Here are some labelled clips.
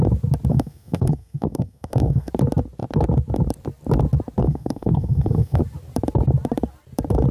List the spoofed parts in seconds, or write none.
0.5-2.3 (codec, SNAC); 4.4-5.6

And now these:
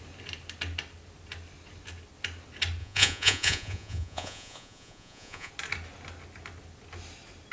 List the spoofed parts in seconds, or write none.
2.8-5.5 (vocoder, Vocos)

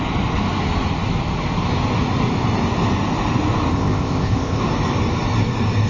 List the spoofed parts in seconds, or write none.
3.7-4.6 (codec, ZipCodec)

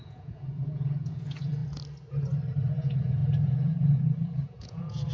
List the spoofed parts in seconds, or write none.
0.0-1.6 (vocoder, Vocos); 2.7-5.1

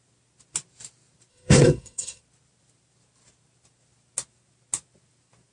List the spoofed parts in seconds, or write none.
1.3-2.2 (codec, SNAC)

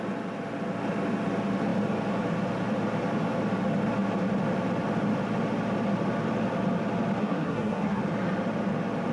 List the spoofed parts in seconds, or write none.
7.2-8.0 (codec, SNAC)